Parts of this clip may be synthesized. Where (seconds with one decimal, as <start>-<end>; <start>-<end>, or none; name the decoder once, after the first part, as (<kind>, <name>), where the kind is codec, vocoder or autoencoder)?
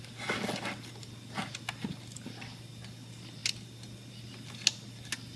none